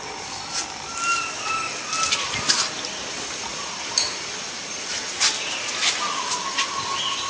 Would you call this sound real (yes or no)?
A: yes